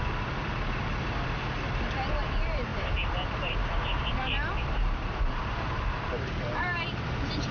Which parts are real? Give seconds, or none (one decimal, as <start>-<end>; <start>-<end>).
0.0-2.7

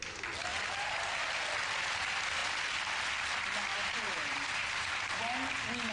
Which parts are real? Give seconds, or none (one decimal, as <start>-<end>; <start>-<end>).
0.0-0.5; 1.1-3.7; 5.2-5.9

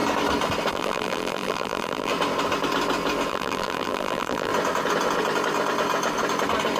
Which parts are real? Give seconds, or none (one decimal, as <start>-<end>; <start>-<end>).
0.0-0.7; 2.1-3.3; 4.5-6.8

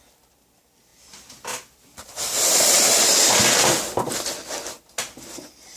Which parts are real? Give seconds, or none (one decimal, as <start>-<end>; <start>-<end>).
0.0-5.8

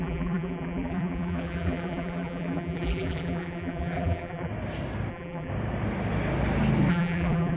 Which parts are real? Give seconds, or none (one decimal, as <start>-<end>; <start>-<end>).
4.5-5.1; 5.5-6.9